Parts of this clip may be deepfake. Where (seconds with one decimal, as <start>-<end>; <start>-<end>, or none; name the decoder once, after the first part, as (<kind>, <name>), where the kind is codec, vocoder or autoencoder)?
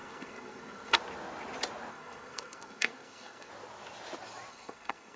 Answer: 0.0-1.0 (codec, SNAC); 1.9-3.5; 4.5-5.2